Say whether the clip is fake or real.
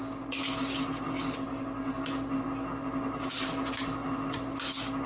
real